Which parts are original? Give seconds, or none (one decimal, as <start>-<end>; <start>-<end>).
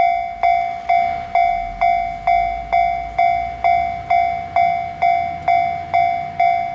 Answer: 0.0-6.7